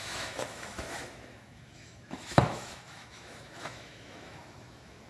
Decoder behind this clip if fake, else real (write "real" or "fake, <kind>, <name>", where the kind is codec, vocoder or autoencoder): fake, autoencoder, DAC-VAE